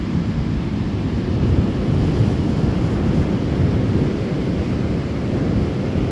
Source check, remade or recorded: recorded